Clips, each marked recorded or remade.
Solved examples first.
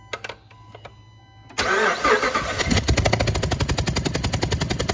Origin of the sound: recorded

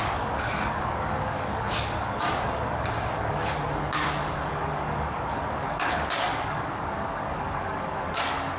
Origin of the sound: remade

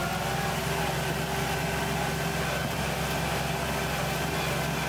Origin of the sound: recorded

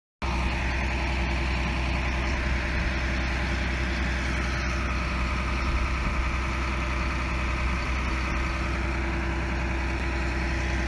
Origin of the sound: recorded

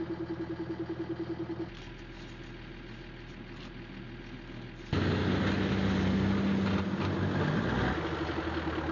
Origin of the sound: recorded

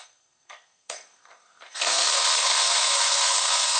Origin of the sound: remade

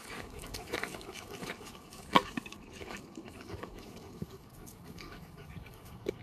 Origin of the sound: remade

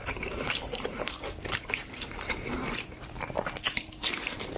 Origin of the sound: remade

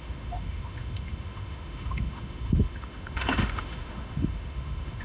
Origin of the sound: remade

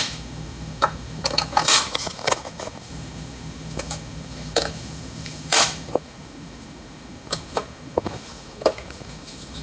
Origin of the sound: remade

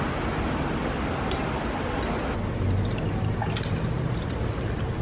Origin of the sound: recorded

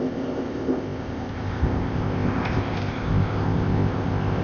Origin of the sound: remade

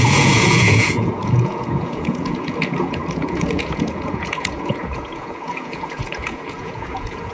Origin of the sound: remade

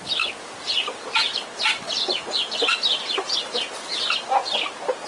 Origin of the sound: recorded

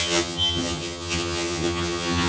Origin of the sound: remade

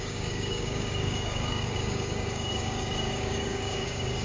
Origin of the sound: remade